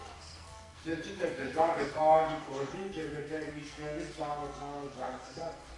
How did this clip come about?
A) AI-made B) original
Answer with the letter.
A